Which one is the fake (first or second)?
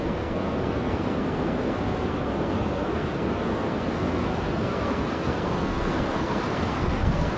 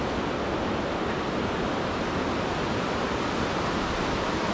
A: first